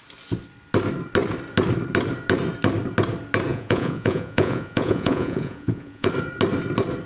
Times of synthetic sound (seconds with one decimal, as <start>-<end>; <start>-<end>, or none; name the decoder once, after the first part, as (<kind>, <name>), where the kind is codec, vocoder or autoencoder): 3.5-6.1 (vocoder, Vocos)